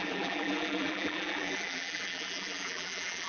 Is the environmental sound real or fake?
fake